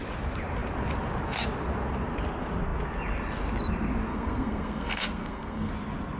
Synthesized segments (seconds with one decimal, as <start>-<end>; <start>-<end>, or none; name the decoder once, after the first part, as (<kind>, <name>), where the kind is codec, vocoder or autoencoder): 4.1-5.7 (codec, SNAC)